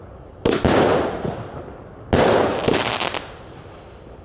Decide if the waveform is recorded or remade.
recorded